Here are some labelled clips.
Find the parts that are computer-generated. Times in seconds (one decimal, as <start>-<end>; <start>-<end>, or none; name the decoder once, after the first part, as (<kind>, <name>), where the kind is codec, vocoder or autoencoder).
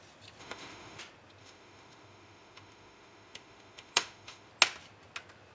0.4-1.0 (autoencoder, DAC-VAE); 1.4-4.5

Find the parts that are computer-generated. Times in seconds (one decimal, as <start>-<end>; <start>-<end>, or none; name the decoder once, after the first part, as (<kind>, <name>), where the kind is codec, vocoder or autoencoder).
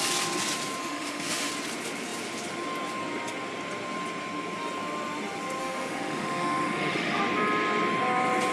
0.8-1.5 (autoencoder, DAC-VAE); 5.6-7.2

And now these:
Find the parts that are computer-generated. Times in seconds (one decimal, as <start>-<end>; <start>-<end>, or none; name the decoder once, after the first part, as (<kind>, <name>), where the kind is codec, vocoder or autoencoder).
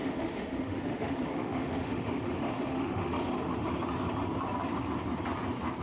0.0-3.5 (autoencoder, DAC-VAE)